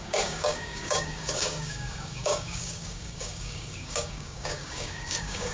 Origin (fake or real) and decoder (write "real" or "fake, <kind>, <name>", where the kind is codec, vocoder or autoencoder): fake, codec, DAC